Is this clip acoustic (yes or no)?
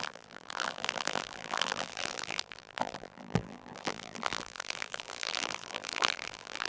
no